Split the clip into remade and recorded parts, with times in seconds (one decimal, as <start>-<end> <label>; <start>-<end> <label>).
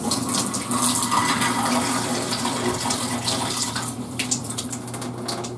0.0-1.2 recorded; 1.2-4.6 remade; 4.6-5.6 recorded